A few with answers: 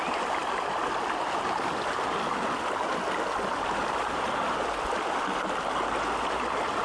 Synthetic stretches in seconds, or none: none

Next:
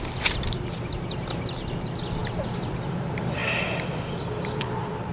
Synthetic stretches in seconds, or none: none

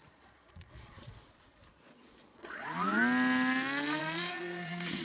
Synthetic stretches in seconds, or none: 0.0-3.0 (vocoder, Vocos); 4.0-5.0